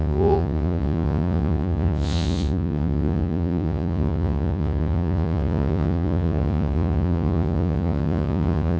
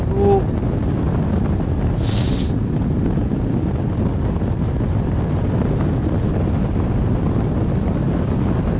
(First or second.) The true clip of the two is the second